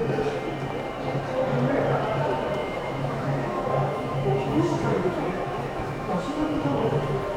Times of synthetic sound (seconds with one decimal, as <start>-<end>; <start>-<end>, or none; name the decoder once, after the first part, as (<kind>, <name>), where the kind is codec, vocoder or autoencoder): 2.6-7.0 (autoencoder, DAC-VAE)